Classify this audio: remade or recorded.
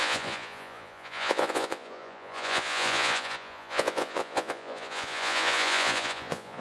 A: remade